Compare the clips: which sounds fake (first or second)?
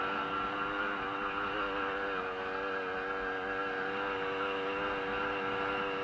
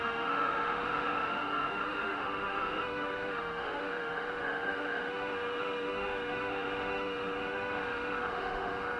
second